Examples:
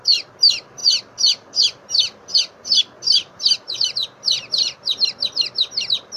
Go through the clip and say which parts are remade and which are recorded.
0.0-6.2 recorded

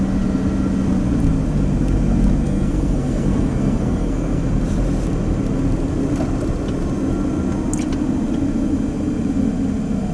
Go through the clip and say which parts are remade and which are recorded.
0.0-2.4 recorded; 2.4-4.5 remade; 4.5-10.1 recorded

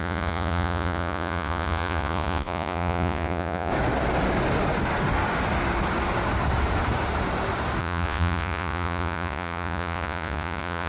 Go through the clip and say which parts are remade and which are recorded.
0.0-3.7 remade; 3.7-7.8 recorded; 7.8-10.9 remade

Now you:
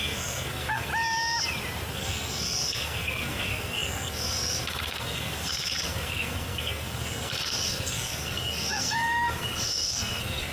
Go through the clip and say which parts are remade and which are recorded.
0.0-0.9 remade; 0.9-1.9 recorded; 1.9-10.5 remade

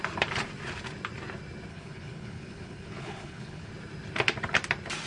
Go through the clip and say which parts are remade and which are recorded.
0.0-1.7 recorded; 1.7-3.7 remade; 3.7-5.1 recorded

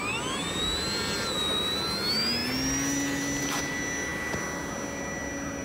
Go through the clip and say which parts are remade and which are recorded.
0.0-5.6 recorded

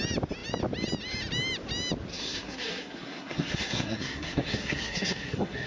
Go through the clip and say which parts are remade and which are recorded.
0.0-2.1 recorded; 2.1-5.7 remade

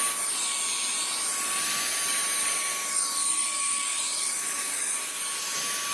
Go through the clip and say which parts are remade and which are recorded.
0.0-2.4 recorded; 2.4-5.2 remade; 5.2-5.9 recorded